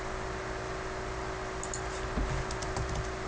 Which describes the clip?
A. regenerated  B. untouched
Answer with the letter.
B